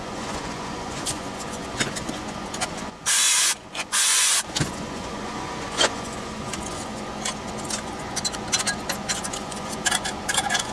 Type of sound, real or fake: fake